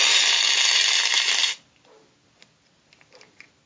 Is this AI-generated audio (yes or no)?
no